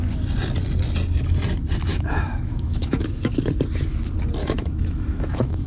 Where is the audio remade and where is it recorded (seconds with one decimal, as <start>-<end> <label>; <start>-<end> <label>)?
0.0-1.9 recorded; 1.9-3.3 remade; 3.3-4.4 recorded; 4.4-5.7 remade